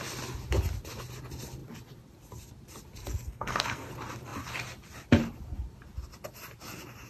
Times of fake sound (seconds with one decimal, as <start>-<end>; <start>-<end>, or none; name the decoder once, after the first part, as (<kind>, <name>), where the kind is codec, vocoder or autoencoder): 3.0-3.9 (codec, SNAC)